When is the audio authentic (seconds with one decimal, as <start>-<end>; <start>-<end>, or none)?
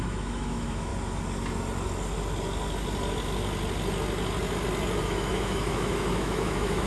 0.9-5.0